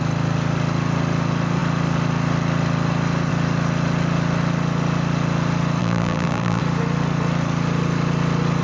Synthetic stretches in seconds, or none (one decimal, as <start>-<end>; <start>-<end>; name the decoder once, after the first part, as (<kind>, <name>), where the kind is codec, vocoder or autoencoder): 5.8-6.6 (vocoder, BigVGAN v2)